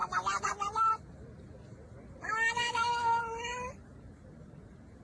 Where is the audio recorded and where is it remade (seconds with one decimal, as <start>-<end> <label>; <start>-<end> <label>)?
0.0-2.6 recorded; 2.6-3.2 remade; 3.2-5.0 recorded